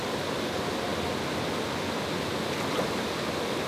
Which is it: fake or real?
real